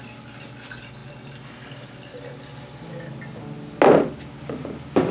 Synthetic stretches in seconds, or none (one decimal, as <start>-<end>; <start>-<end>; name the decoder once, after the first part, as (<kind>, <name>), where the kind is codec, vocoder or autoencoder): none